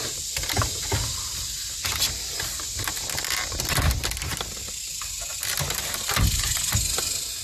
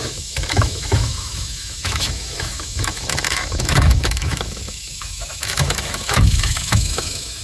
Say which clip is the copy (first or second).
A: second